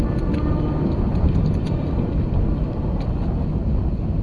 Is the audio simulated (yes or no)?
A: no